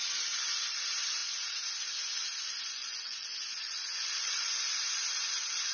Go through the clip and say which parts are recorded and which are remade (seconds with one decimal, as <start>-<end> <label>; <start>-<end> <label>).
0.0-2.8 recorded; 2.8-4.6 remade; 4.6-5.7 recorded